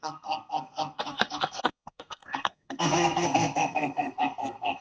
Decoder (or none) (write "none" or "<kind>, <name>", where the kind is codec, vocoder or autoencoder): codec, SNAC